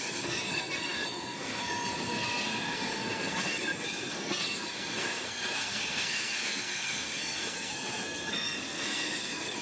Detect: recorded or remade remade